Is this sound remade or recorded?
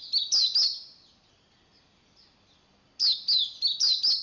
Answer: recorded